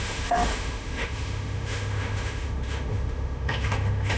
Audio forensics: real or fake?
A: fake